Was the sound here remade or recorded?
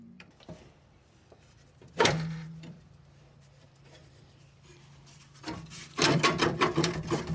remade